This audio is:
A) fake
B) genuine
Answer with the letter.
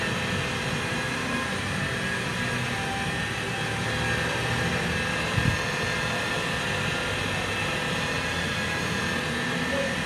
B